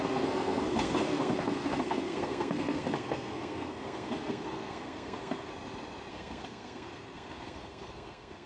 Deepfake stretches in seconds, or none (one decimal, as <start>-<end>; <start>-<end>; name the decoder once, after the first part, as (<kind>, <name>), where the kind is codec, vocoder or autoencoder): 0.0-5.5 (codec, SNAC); 6.1-8.5